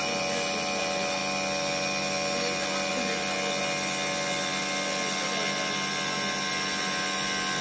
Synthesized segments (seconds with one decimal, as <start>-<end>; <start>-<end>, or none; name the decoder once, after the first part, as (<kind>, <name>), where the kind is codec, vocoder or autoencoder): none